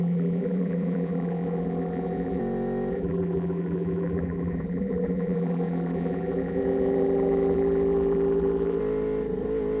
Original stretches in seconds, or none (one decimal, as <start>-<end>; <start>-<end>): 2.4-2.9; 8.8-9.8